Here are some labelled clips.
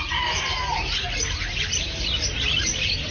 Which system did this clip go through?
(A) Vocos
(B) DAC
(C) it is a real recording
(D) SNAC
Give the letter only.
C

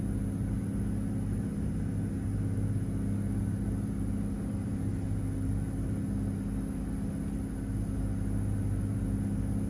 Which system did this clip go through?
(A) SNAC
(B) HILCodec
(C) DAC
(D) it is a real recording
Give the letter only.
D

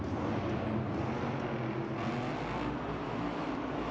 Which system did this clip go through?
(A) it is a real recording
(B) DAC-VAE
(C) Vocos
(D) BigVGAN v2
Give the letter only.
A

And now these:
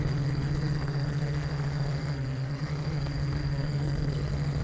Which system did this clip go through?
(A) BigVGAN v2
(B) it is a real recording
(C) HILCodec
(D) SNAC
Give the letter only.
D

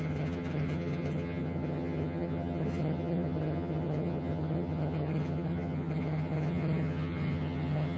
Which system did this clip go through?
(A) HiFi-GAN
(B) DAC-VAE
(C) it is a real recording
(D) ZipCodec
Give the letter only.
A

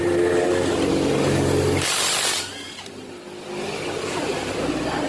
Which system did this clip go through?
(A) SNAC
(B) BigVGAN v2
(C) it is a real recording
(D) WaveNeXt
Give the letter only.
C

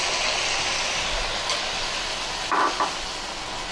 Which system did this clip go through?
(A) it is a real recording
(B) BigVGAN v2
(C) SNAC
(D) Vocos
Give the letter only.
A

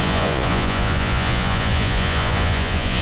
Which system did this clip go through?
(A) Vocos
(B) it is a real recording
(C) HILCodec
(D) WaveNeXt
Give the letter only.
A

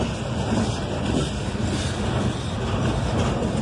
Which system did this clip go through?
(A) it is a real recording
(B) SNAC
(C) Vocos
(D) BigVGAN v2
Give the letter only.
A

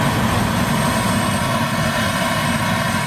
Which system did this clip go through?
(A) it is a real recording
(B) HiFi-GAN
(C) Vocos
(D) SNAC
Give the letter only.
A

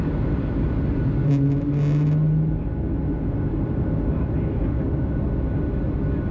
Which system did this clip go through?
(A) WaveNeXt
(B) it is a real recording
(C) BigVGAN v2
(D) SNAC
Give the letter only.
B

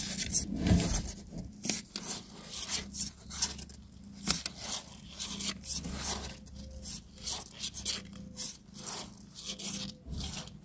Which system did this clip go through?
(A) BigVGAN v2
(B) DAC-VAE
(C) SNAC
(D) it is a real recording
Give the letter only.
D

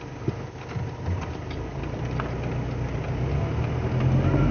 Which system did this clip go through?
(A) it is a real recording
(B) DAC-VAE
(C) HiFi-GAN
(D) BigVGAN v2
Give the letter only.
A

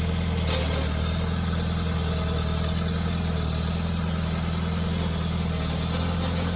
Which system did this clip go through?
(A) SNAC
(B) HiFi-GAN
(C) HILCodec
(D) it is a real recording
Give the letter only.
D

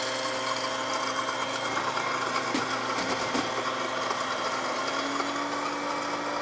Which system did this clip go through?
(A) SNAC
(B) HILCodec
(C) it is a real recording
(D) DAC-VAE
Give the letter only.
C